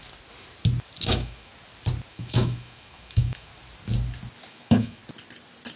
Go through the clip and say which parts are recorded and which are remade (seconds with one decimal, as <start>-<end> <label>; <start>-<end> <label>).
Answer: 0.0-1.1 recorded; 1.1-1.5 remade; 1.5-2.1 recorded; 2.1-3.5 remade; 3.5-4.5 recorded; 4.5-5.0 remade; 5.0-5.8 recorded